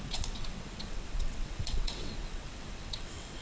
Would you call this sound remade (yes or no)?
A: yes